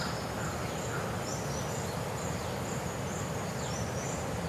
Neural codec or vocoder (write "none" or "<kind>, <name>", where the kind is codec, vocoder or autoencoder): none